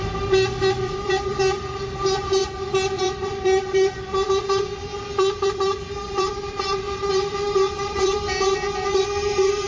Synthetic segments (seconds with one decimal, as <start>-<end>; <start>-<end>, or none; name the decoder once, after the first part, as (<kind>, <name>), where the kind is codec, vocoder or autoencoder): 0.0-2.4 (vocoder, BigVGAN v2); 3.0-9.7